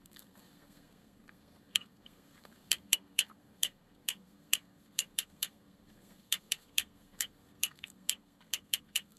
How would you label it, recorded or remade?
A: remade